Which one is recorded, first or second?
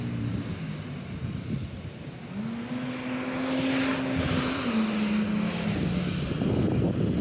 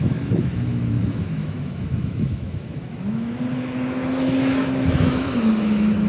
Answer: first